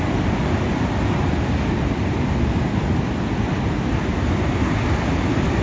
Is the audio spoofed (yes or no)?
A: no